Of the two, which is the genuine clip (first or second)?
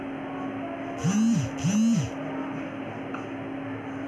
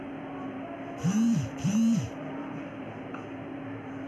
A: first